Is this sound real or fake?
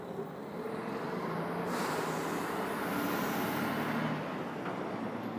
real